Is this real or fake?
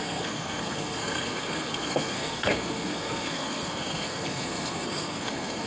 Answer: fake